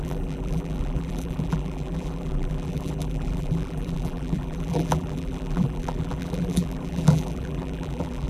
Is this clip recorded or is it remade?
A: remade